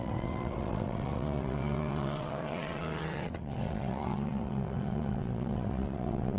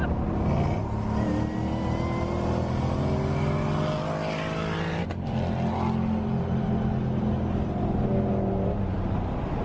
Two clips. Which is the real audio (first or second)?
second